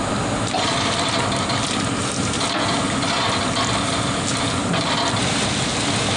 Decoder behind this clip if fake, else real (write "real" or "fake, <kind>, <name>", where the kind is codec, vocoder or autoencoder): real